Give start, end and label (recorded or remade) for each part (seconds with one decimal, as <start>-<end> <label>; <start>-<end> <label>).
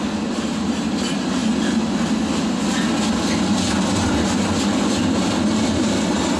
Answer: 0.0-6.4 recorded